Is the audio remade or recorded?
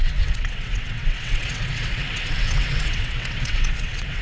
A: remade